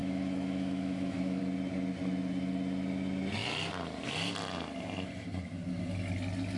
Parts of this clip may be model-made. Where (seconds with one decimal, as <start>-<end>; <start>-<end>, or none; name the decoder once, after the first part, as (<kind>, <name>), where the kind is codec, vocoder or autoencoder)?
0.0-1.4 (autoencoder, DAC-VAE)